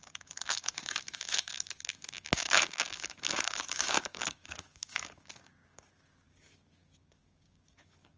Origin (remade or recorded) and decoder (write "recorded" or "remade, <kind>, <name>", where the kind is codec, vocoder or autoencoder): remade, codec, DAC